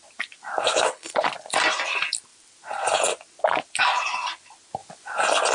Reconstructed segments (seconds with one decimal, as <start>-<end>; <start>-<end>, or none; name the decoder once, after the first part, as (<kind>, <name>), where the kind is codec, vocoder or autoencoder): 0.7-1.3 (codec, HILCodec)